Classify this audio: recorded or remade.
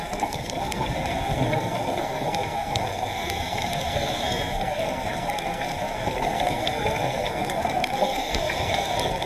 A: remade